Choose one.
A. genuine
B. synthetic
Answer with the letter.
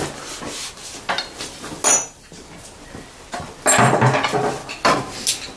A